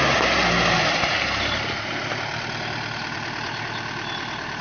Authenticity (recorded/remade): recorded